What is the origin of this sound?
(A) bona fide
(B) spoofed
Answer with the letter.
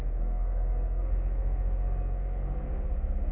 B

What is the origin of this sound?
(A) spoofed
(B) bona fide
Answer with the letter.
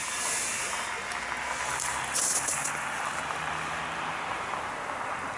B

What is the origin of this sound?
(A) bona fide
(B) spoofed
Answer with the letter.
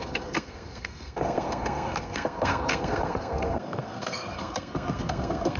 B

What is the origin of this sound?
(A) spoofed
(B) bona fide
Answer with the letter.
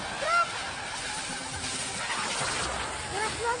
B